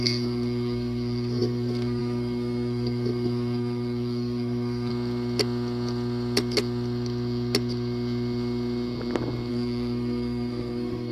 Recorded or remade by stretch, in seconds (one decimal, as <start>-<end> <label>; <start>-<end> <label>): 0.0-4.9 remade; 4.9-9.5 recorded; 9.5-11.1 remade